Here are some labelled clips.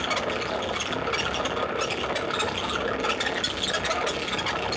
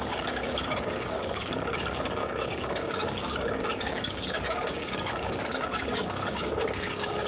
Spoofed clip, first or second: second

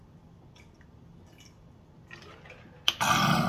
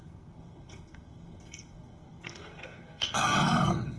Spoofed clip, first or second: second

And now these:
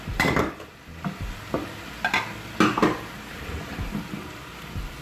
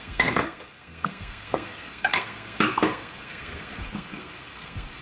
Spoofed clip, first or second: second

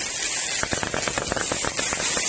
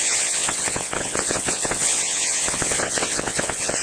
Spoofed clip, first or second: second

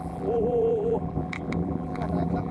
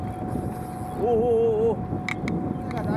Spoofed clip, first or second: first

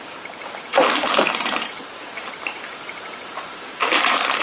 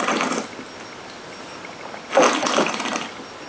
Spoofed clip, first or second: first